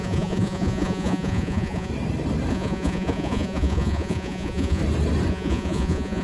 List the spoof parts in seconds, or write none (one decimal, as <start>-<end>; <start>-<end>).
0.0-1.9; 2.5-4.8; 5.3-6.2